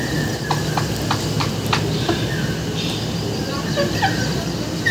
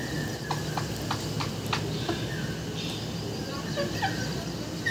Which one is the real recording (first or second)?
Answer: second